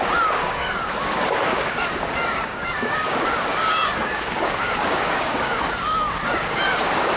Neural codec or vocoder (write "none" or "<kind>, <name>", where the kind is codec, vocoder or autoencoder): codec, DAC